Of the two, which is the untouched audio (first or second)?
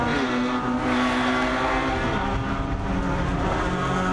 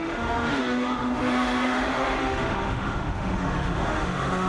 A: first